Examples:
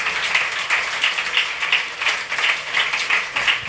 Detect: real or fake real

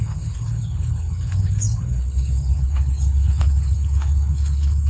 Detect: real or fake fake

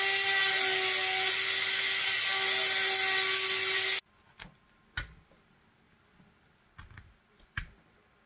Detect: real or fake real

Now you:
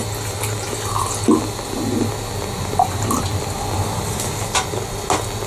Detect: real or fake real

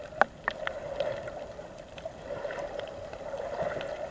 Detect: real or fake real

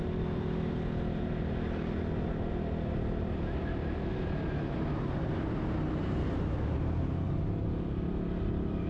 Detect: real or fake real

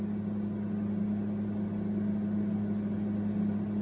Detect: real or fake real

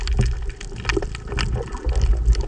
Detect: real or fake real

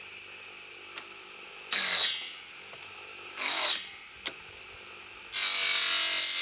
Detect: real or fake real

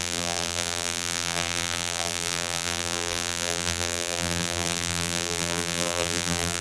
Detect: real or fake fake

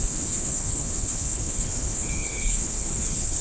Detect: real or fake fake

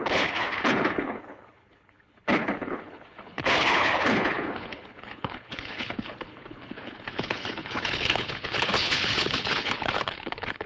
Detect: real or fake fake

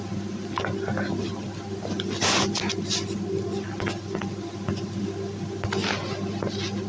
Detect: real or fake real